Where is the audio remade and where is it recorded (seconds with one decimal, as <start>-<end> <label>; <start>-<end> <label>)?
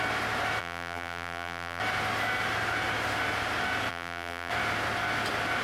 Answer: 0.0-0.6 recorded; 0.6-1.8 remade; 1.8-3.9 recorded; 3.9-4.5 remade; 4.5-5.6 recorded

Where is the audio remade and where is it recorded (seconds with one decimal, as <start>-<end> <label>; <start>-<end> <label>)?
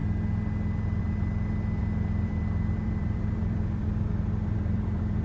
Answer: 0.0-1.8 recorded; 1.8-5.2 remade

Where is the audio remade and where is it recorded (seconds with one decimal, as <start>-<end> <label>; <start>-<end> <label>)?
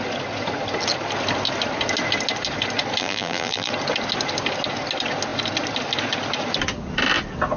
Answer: 0.0-3.0 recorded; 3.0-3.7 remade; 3.7-7.6 recorded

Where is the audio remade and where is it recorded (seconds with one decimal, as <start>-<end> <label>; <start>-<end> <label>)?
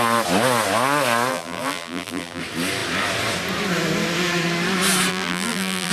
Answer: 0.0-1.3 recorded; 1.3-2.4 remade; 2.4-5.1 recorded; 5.1-5.9 remade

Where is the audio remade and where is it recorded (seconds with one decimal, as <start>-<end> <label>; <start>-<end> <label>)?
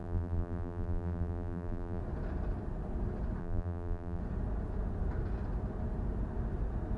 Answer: 0.0-2.0 remade; 2.0-3.4 recorded; 3.4-4.2 remade; 4.2-7.0 recorded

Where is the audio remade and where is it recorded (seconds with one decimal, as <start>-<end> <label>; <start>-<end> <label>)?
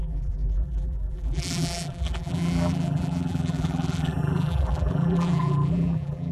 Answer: 0.0-6.3 remade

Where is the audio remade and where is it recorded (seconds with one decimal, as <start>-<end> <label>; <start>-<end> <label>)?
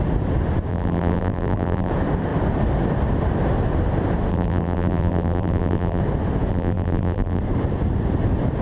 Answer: 0.0-0.7 recorded; 0.7-1.9 remade; 1.9-4.3 recorded; 4.3-6.0 remade; 6.0-6.5 recorded; 6.5-7.4 remade; 7.4-8.6 recorded